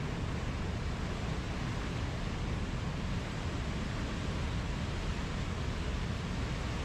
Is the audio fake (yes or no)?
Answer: no